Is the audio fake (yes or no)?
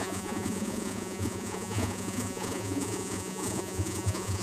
yes